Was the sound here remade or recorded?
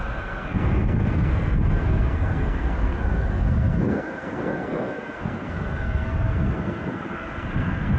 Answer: remade